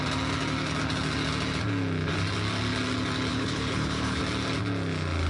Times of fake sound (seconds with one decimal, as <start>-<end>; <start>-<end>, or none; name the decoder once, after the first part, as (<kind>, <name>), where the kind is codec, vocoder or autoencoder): 3.3-4.2 (codec, HILCodec)